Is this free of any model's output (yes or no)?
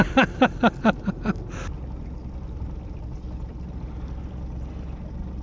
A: yes